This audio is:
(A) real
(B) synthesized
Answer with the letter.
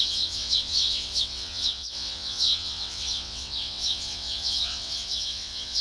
B